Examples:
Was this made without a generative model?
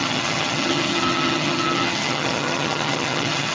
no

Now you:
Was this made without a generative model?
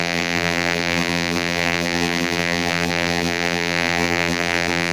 no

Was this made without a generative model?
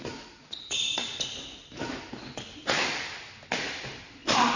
yes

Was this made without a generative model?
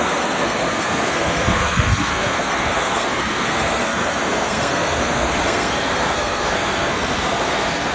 no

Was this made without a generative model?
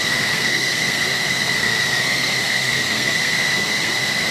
no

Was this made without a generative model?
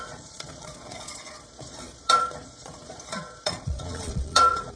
no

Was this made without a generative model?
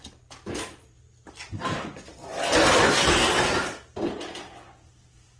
yes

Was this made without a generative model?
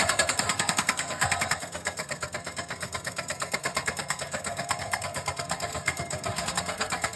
no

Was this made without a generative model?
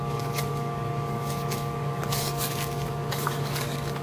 no